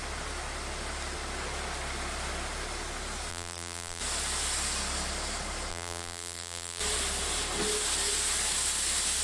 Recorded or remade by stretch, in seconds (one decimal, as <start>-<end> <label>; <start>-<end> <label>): 0.0-3.3 recorded; 3.3-4.0 remade; 4.0-5.7 recorded; 5.7-6.8 remade; 6.8-9.2 recorded